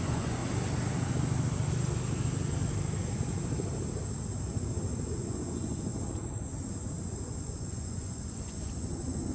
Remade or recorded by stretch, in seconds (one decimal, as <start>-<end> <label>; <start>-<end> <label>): 0.0-0.4 remade; 0.4-5.0 recorded; 5.0-5.9 remade; 5.9-7.2 recorded; 7.2-9.3 remade